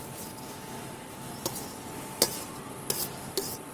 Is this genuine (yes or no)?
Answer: yes